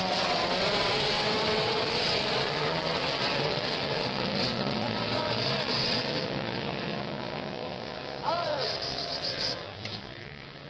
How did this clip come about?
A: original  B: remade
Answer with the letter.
B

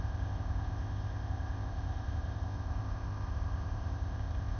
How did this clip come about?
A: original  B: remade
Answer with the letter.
B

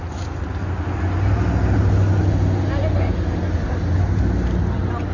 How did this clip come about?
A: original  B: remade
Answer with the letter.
A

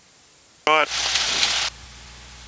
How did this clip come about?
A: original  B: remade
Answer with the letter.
A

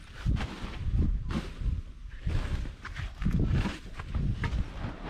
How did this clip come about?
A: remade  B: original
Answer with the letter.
B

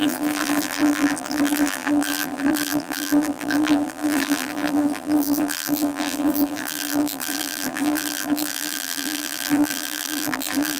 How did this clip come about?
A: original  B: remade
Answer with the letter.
B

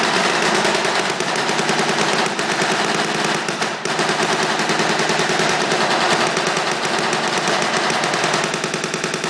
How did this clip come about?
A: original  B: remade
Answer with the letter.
A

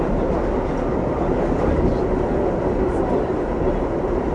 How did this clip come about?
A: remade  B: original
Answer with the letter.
B